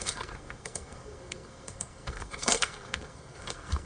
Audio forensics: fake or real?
fake